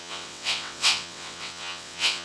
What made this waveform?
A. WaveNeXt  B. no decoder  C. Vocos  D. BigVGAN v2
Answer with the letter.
A